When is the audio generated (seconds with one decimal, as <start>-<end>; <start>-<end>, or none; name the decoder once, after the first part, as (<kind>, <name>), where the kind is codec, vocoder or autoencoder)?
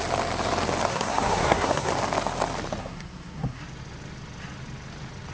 0.9-1.9 (codec, SNAC); 2.8-3.6